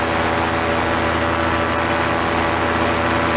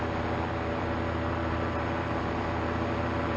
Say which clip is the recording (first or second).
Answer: first